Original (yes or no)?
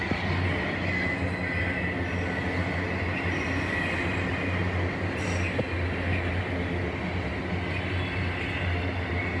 yes